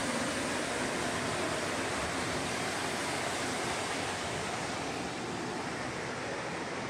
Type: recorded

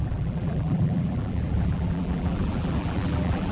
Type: remade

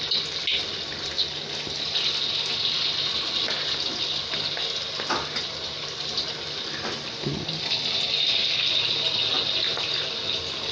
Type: recorded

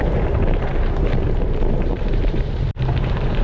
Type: remade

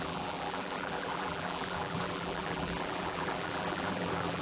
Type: remade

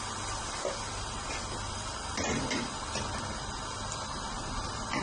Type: remade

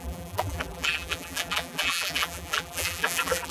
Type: remade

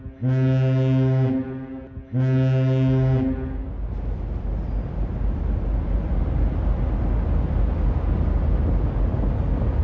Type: recorded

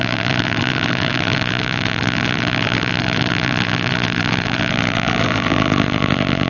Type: remade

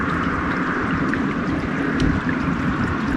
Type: remade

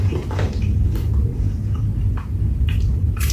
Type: remade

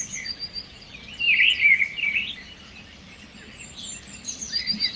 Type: remade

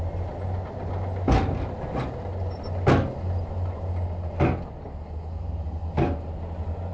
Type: recorded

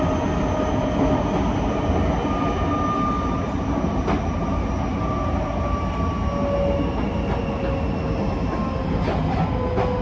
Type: recorded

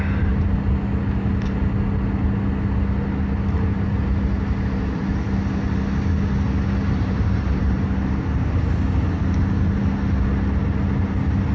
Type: recorded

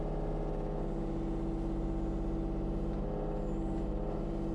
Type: recorded